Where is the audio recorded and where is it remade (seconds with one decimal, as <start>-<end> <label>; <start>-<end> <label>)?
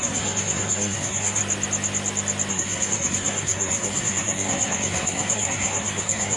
0.0-1.4 remade; 1.4-2.5 recorded; 2.5-6.4 remade